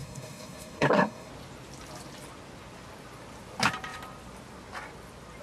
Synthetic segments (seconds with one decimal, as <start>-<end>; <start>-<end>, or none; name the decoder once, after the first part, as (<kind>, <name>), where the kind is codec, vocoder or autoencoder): 0.0-1.3 (codec, SNAC)